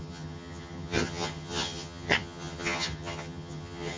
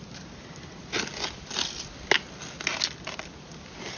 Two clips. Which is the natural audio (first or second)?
second